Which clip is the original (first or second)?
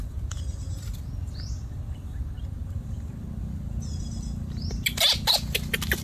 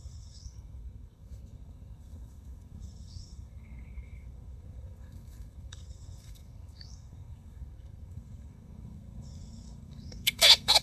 first